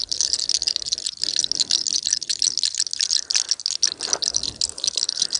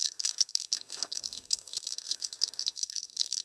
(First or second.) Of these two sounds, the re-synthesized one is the second